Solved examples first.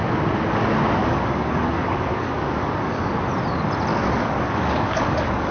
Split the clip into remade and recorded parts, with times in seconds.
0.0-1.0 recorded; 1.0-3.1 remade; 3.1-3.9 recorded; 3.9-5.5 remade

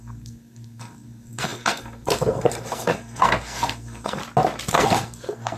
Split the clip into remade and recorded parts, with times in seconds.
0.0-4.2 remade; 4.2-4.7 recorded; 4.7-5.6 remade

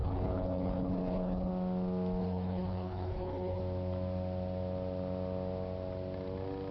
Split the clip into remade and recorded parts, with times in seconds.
0.0-1.5 remade; 1.5-2.2 recorded; 2.2-3.6 remade; 3.6-6.7 recorded